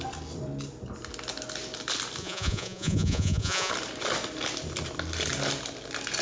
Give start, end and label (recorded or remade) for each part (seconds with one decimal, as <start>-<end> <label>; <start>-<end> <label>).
0.0-2.2 recorded; 2.2-3.7 remade; 3.7-6.2 recorded